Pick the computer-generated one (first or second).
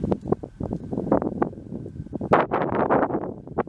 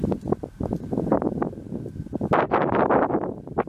first